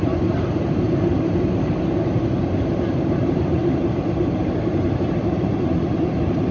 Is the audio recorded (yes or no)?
no